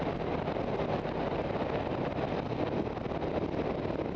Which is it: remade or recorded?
recorded